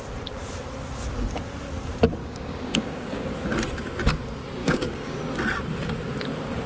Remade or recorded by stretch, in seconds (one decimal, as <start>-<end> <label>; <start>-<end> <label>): 0.0-2.2 recorded; 2.2-3.3 remade; 3.3-4.6 recorded; 4.6-5.2 remade; 5.2-6.7 recorded